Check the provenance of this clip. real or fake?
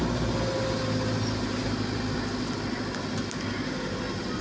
real